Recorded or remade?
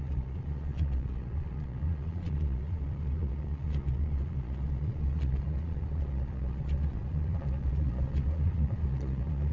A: remade